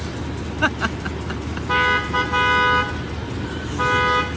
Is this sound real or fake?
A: real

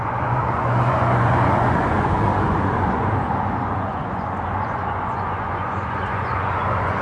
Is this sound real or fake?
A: fake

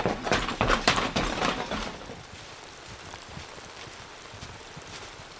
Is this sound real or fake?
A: fake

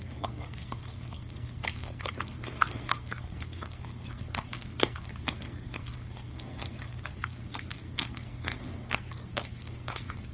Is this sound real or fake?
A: fake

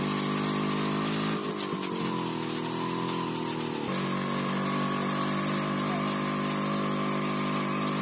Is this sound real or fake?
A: real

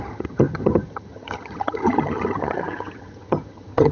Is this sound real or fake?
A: fake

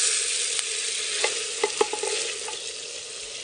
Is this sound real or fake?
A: real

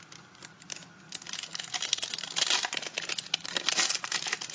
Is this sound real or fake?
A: real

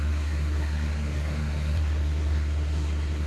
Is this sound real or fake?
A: fake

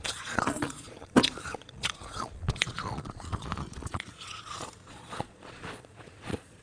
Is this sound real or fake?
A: fake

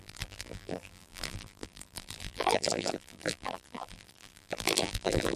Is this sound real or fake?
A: fake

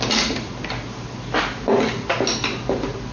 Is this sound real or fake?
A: real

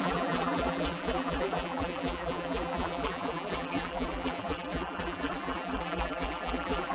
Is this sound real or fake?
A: fake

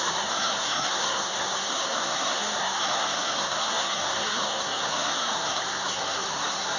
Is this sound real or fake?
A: fake